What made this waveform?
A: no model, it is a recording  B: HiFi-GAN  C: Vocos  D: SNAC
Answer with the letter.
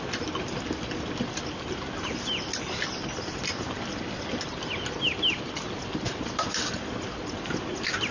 A